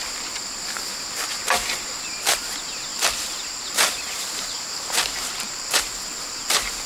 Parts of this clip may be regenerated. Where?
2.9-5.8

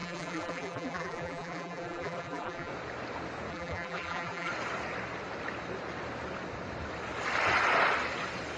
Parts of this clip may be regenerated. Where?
0.0-2.7; 3.5-4.5

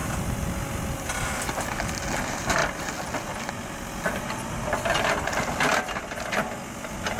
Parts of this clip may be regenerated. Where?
none

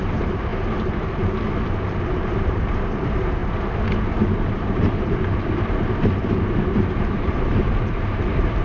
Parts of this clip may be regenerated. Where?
0.0-0.5; 2.0-3.4; 4.2-8.6

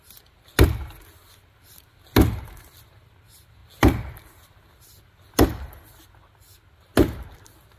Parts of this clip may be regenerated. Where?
none

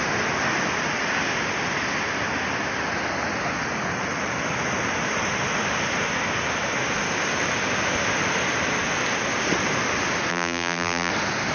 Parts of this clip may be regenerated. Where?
10.3-11.1